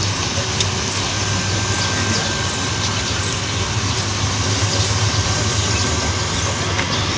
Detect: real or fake real